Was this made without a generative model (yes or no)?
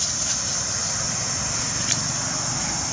yes